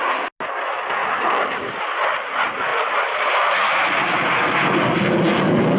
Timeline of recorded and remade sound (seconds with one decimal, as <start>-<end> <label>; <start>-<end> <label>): 0.0-1.0 recorded; 1.0-1.6 remade; 1.6-5.8 recorded